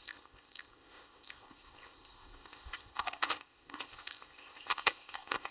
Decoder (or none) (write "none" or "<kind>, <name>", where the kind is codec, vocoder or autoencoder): codec, ZipCodec